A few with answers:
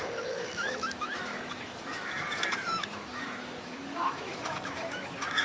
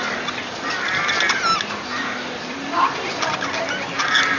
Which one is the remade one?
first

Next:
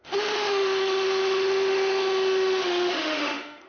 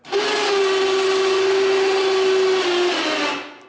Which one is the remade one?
first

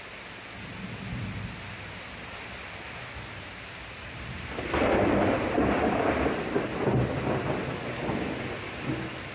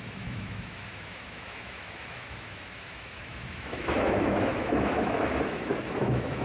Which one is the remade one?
second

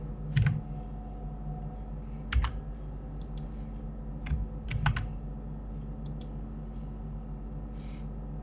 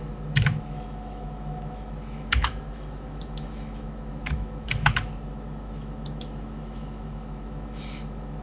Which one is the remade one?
second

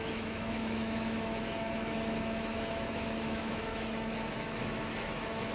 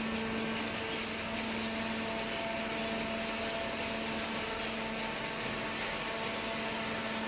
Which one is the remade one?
first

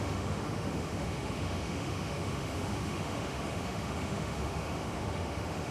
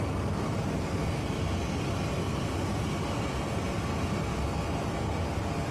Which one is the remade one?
first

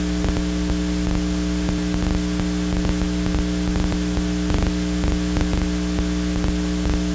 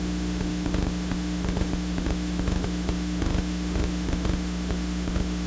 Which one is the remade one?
second